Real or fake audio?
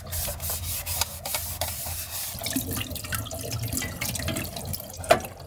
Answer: real